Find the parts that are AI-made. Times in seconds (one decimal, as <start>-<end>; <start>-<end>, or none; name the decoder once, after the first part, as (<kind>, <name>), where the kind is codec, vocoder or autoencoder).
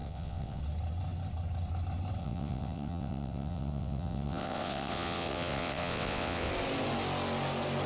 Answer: 0.0-0.6 (vocoder, WaveNeXt); 2.2-6.5